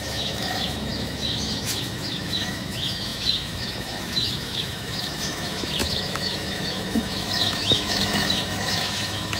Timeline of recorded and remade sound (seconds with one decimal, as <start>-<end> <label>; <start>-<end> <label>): 0.0-9.4 remade